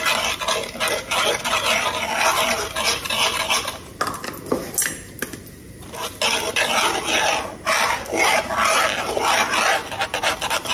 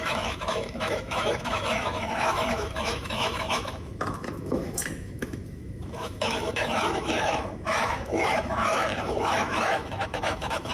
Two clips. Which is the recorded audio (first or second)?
first